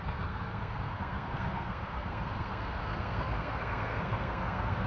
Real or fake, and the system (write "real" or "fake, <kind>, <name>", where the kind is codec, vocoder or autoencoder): fake, codec, SNAC